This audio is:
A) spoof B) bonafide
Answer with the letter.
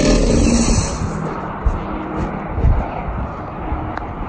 B